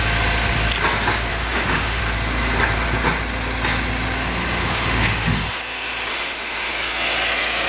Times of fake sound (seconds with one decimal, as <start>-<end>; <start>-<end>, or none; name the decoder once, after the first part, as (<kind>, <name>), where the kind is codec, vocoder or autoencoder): 1.3-2.0 (autoencoder, DAC-VAE); 4.6-5.6; 6.1-6.7